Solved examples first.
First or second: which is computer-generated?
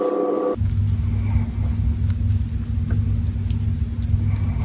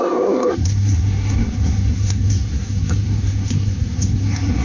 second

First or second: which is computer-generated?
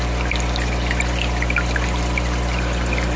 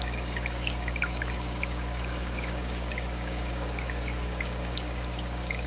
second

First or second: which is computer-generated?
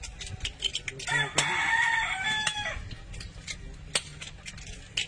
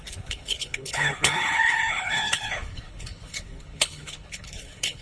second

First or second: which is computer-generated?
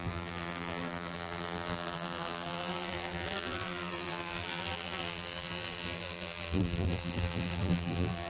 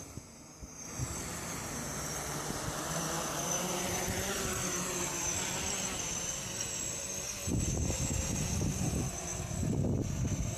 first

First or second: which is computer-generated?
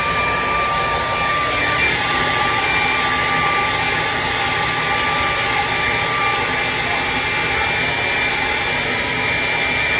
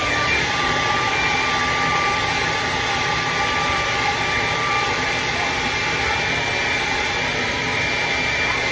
second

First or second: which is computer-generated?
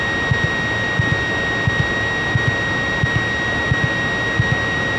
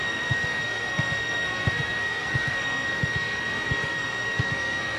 second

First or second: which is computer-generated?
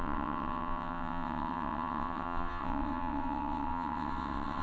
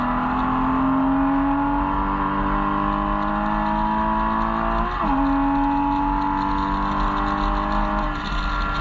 first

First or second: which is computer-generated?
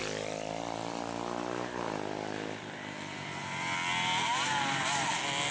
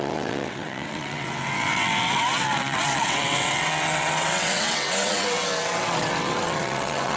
second